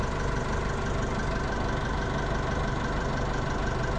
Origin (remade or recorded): recorded